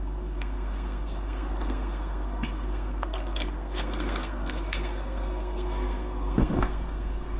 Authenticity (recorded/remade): remade